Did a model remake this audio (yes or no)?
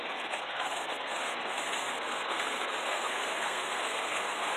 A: yes